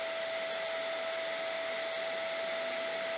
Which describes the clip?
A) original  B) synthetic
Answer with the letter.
A